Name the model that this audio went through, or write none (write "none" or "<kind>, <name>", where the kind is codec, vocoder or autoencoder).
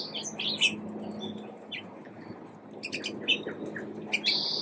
none